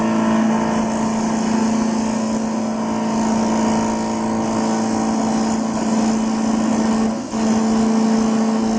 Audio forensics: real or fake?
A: real